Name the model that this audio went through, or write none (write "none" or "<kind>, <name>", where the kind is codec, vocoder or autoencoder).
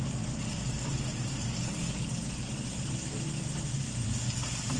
none